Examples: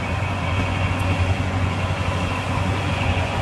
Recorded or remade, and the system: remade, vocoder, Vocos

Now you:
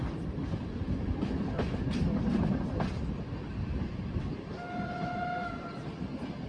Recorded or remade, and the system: recorded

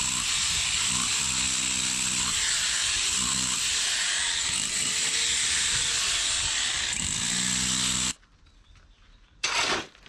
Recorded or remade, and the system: recorded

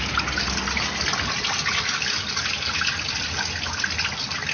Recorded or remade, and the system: recorded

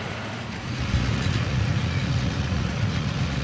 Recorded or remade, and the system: remade, vocoder, Vocos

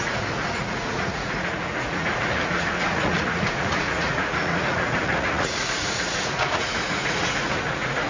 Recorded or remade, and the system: remade, vocoder, Vocos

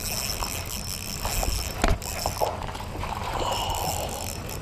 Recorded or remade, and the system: recorded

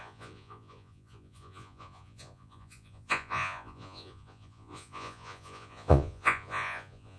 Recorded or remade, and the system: remade, vocoder, Vocos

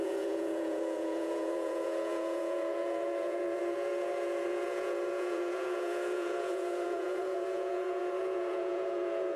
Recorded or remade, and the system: remade, vocoder, Vocos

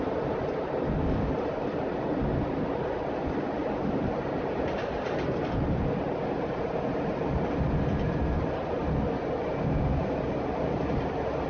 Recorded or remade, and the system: recorded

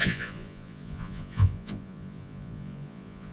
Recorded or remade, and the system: remade, vocoder, Vocos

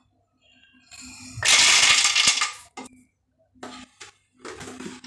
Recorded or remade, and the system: recorded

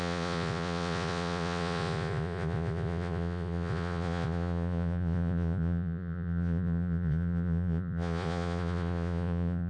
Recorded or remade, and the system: remade, vocoder, Vocos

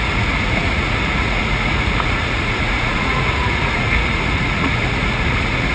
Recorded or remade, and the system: remade, vocoder, Vocos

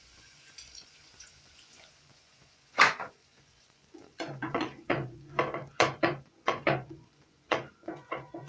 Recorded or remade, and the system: remade, vocoder, Vocos